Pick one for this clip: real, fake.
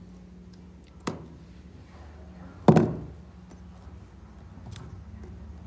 real